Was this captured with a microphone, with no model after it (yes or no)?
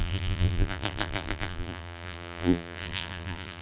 no